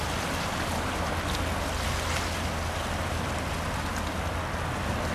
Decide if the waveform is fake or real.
real